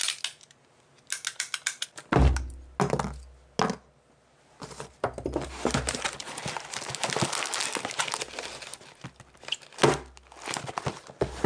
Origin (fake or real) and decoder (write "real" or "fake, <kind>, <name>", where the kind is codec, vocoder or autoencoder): real